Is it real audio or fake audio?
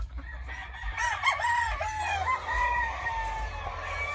real